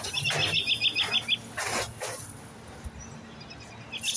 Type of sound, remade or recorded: recorded